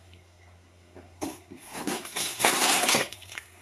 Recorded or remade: remade